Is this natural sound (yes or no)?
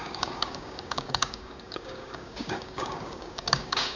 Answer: no